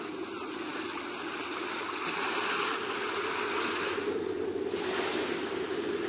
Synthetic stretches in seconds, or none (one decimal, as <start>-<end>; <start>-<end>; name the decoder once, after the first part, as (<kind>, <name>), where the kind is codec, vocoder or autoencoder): none